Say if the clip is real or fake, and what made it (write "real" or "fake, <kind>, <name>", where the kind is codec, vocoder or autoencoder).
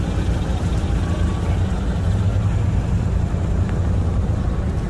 real